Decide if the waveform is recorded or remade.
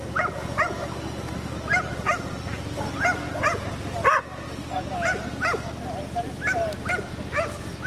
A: recorded